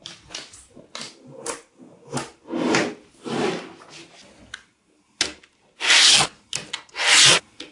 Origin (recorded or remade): recorded